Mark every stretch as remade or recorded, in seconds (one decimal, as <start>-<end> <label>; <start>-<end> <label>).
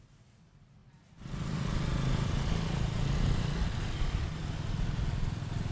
0.0-5.7 recorded